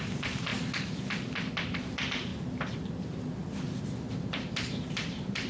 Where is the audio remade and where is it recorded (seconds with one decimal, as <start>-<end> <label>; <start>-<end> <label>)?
0.0-0.5 remade; 0.5-1.5 recorded; 1.5-2.3 remade; 2.3-4.1 recorded; 4.1-5.5 remade